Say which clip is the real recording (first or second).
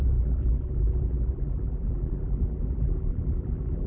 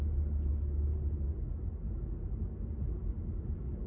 second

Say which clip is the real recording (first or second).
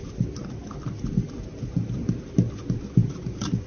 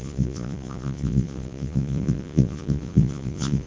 first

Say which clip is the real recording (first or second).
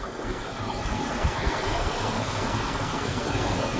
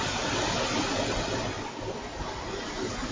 second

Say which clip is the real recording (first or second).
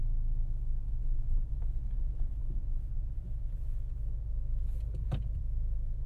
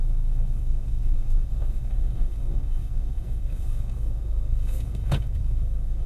first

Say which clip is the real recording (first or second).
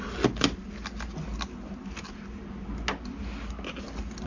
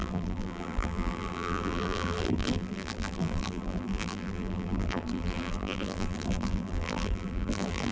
first